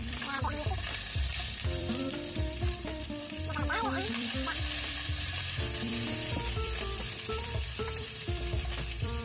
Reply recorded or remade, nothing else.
remade